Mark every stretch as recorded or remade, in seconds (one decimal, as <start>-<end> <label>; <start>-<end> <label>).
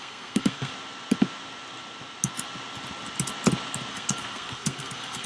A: 0.0-0.7 remade; 0.7-3.9 recorded; 3.9-5.3 remade